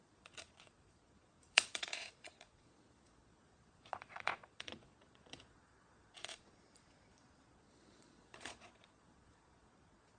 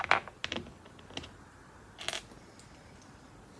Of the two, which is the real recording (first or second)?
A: second